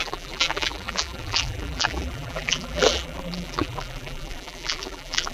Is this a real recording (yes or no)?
no